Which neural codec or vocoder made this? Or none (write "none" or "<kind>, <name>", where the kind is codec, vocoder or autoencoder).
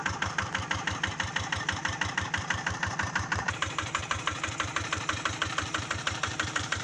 vocoder, BigVGAN v2